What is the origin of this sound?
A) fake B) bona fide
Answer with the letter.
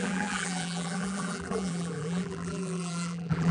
A